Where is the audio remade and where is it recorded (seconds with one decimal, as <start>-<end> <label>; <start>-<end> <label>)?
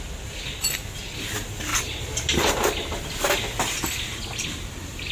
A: 0.0-5.1 recorded